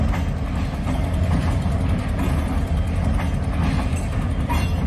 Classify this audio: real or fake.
real